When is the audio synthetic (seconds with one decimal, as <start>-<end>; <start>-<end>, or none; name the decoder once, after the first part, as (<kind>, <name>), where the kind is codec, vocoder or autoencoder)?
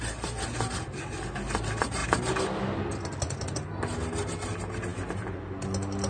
none